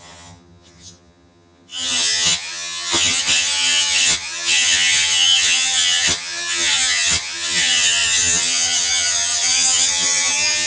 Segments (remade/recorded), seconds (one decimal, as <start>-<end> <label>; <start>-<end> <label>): 0.0-10.7 remade